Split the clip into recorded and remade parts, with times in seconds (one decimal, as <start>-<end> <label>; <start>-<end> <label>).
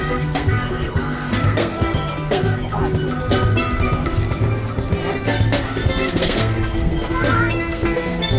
0.0-2.8 remade; 2.8-5.1 recorded; 5.1-8.4 remade